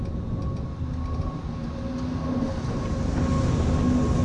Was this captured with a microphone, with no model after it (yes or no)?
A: yes